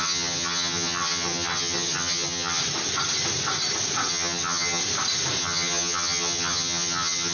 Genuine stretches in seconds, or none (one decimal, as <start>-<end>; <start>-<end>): 2.6-4.1; 4.8-5.4